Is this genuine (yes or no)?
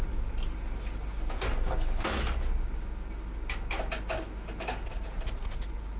yes